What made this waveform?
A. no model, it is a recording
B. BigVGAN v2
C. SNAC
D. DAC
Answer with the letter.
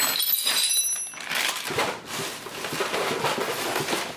A